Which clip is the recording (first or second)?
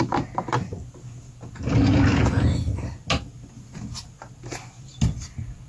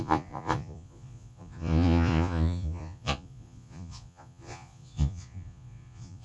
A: first